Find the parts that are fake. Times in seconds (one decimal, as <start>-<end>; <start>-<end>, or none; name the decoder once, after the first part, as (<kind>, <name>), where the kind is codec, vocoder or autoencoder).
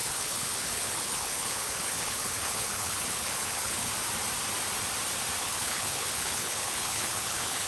0.0-3.9 (codec, HILCodec); 5.4-7.7